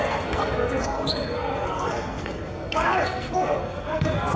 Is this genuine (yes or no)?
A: no